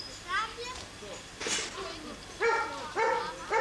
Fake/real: real